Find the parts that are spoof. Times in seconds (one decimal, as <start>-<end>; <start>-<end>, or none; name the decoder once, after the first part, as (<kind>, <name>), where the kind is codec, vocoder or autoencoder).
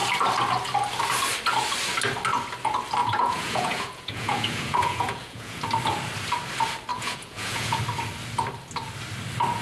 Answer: 3.0-5.6 (vocoder, Vocos); 6.9-7.8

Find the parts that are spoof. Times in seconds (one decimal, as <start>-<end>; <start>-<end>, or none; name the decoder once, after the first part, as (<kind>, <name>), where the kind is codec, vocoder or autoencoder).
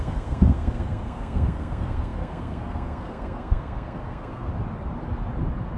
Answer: 0.0-4.5 (codec, SNAC)